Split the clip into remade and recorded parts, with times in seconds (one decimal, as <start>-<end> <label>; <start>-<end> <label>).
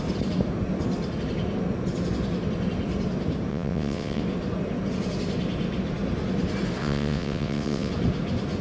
0.0-3.5 recorded; 3.5-4.2 remade; 4.2-6.8 recorded; 6.8-7.9 remade; 7.9-8.6 recorded